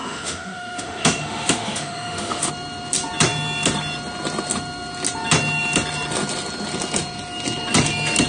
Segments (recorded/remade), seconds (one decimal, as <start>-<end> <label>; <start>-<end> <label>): 0.0-2.5 remade; 2.5-8.3 recorded